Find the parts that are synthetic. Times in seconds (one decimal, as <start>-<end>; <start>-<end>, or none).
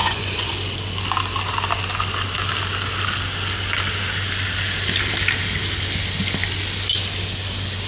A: 0.0-0.5